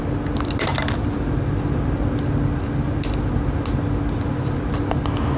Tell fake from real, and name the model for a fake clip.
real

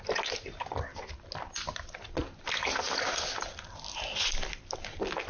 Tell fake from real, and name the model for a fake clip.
real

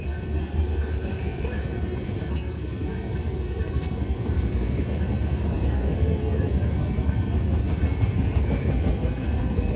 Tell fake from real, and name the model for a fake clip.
fake, codec, SNAC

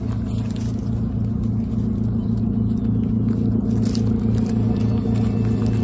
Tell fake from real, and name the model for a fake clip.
real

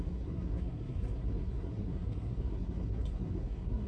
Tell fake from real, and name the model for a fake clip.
fake, codec, SNAC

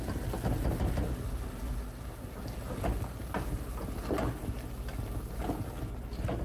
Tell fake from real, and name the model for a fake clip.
real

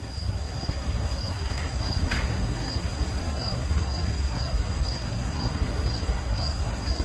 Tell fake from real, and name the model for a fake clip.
fake, codec, SNAC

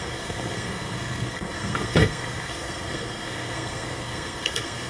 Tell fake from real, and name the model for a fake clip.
fake, codec, SNAC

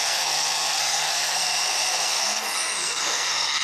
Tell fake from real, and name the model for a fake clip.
fake, codec, SNAC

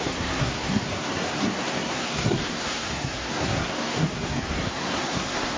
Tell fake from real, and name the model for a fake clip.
fake, codec, SNAC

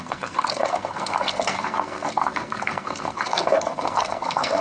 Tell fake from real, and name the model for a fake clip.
fake, codec, SNAC